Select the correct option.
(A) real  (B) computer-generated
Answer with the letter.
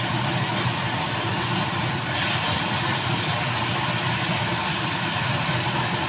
A